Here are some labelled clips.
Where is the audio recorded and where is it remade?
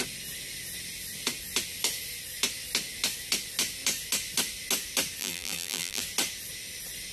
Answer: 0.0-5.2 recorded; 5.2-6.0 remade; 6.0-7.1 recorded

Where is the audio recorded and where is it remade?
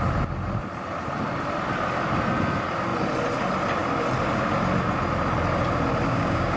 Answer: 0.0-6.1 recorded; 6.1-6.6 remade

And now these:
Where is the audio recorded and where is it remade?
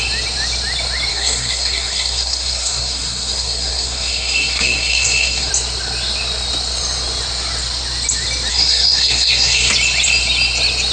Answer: 0.0-1.1 recorded; 1.1-5.5 remade; 5.5-8.5 recorded; 8.5-9.7 remade; 9.7-10.9 recorded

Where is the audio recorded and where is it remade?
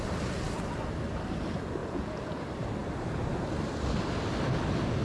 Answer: 0.0-1.8 recorded; 1.8-2.4 remade; 2.4-5.0 recorded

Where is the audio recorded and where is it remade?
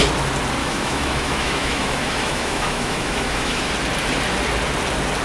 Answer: 0.0-0.6 recorded; 0.6-3.7 remade; 3.7-5.2 recorded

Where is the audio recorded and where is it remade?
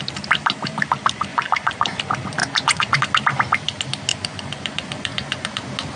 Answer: 0.0-1.3 recorded; 1.3-2.0 remade; 2.0-2.4 recorded; 2.4-3.0 remade; 3.0-4.1 recorded; 4.1-5.6 remade; 5.6-6.0 recorded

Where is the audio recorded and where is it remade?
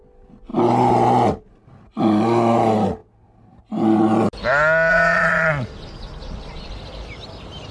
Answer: 0.0-4.9 recorded; 4.9-6.7 remade; 6.7-7.7 recorded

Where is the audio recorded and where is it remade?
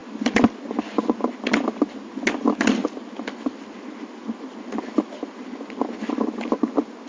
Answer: 0.0-7.1 recorded